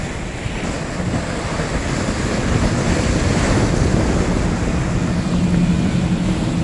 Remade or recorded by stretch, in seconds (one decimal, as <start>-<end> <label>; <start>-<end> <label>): 0.0-3.3 recorded; 3.3-4.0 remade; 4.0-6.6 recorded